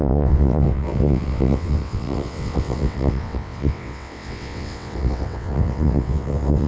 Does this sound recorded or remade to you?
remade